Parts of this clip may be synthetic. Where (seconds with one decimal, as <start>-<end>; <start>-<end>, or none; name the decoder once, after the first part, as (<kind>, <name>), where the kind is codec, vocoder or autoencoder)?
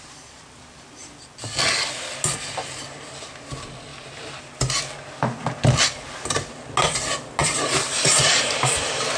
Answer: 3.9-4.5 (vocoder, BigVGAN v2); 7.4-9.2